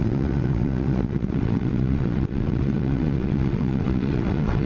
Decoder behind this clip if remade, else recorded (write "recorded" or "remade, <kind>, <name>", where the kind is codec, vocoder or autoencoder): remade, vocoder, WaveNeXt